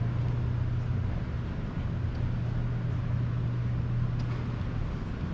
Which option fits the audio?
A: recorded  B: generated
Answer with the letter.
A